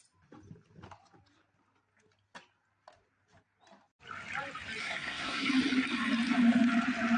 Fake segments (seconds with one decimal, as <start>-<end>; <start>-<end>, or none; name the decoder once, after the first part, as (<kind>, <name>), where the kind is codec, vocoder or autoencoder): 4.8-5.5 (codec, SNAC)

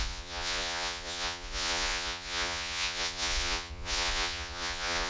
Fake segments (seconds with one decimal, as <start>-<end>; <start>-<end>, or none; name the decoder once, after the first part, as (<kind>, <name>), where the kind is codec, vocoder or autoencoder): 0.0-5.1 (vocoder, Vocos)